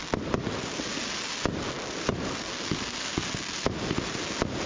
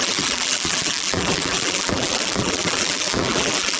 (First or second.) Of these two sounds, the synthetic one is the second